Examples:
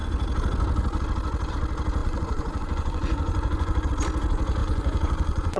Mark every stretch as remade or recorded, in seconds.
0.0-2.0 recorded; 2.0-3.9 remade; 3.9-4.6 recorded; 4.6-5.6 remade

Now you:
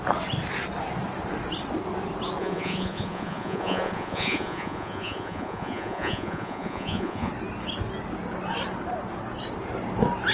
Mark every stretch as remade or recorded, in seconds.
0.0-2.4 recorded; 2.4-7.3 remade; 7.3-10.3 recorded

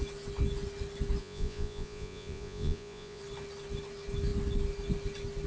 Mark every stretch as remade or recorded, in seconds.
0.0-1.2 recorded; 1.2-3.2 remade; 3.2-5.5 recorded

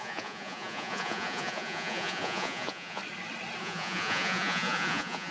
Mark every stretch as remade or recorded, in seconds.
0.0-3.0 remade; 3.0-3.6 recorded; 3.6-5.3 remade

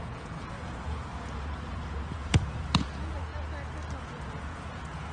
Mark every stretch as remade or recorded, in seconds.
0.0-3.3 remade; 3.3-4.0 recorded; 4.0-5.1 remade

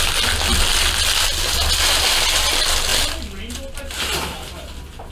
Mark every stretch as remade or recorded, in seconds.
0.0-5.1 recorded

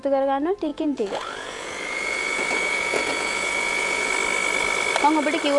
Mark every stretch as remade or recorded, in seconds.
0.0-0.7 recorded; 0.7-4.1 remade; 4.1-5.6 recorded

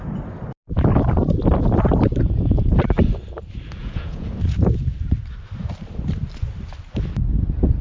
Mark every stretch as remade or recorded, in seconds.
0.0-3.8 recorded; 3.8-4.3 remade; 4.3-7.8 recorded